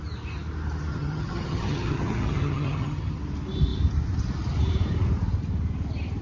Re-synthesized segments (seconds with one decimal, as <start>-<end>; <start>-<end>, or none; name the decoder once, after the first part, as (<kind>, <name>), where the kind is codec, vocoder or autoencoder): 0.9-3.2 (vocoder, HiFi-GAN)